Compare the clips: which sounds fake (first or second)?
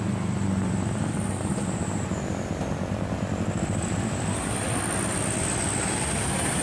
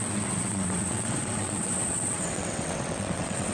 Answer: second